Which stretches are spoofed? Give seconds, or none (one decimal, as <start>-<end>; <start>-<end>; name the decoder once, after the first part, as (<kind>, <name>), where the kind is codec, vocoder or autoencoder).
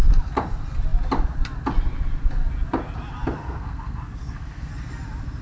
3.4-4.7 (codec, SNAC)